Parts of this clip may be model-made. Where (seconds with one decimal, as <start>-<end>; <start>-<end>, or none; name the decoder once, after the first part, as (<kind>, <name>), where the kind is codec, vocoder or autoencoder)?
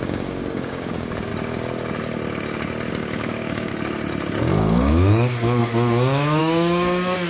0.0-1.3 (codec, DAC); 2.9-3.7; 4.4-7.3